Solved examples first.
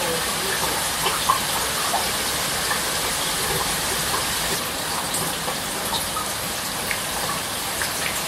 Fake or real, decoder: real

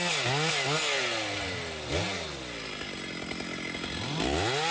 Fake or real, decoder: real